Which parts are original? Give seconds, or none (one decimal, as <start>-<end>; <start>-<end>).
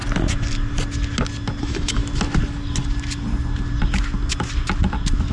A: 0.0-1.6; 2.0-5.3